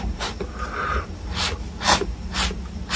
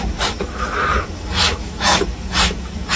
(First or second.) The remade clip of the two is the second